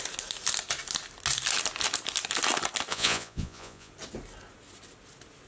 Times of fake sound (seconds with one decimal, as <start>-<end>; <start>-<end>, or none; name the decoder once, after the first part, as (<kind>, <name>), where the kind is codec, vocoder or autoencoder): 2.9-3.9 (vocoder, Vocos)